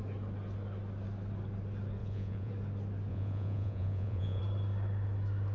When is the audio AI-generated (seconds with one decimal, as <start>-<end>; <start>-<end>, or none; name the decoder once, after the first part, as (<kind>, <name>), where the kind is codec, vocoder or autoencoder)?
2.0-2.5 (vocoder, Vocos); 3.1-4.4